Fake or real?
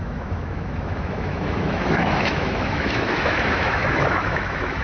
fake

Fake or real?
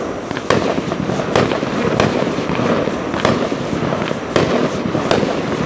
real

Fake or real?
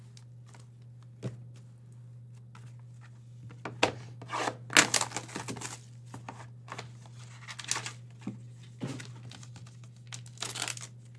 real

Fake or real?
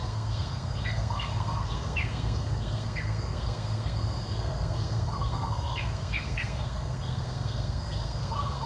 fake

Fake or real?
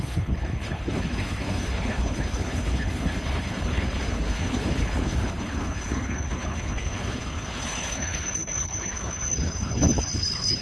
fake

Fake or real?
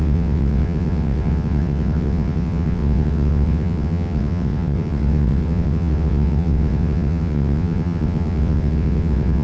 fake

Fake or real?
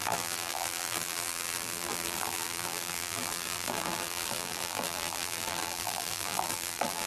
fake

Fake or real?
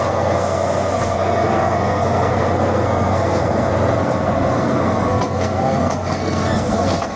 fake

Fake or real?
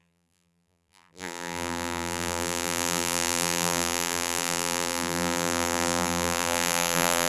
fake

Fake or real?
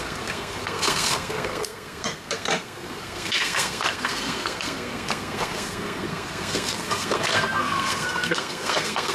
fake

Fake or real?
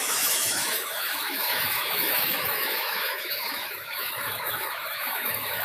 fake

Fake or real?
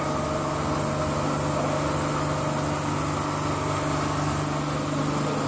real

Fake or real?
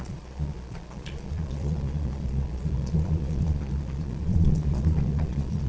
fake